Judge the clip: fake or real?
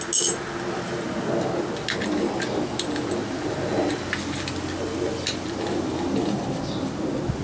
real